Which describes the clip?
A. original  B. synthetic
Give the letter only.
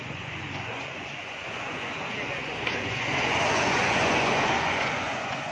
B